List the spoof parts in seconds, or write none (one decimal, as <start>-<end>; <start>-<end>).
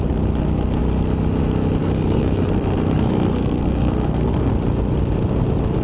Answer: 1.8-4.5